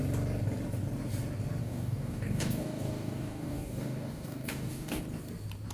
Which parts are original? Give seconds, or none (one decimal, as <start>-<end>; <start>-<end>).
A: 0.0-1.6; 5.0-5.7